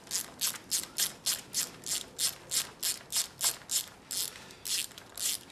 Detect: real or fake real